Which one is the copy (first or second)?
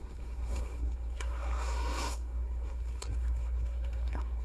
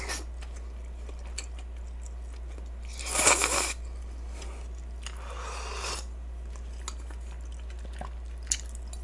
first